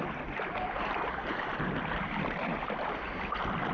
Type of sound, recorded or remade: recorded